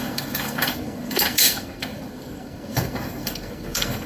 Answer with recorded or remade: remade